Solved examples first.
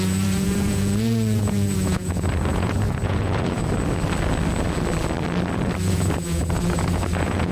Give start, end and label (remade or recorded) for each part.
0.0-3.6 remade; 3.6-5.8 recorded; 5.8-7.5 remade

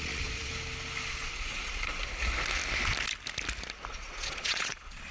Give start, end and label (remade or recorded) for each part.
0.0-0.5 remade; 0.5-1.1 recorded; 1.1-1.9 remade; 1.9-3.9 recorded; 3.9-5.1 remade

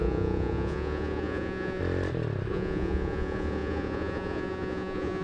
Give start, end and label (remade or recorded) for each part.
0.0-1.8 remade; 1.8-2.5 recorded; 2.5-5.2 remade

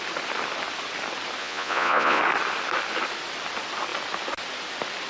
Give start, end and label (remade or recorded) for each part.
0.0-1.4 recorded; 1.4-2.2 remade; 2.2-5.1 recorded